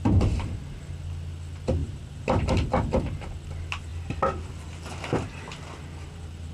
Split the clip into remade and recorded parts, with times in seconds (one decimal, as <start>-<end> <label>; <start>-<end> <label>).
0.0-1.8 recorded; 1.8-2.4 remade; 2.4-6.5 recorded